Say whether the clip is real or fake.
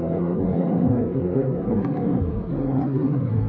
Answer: fake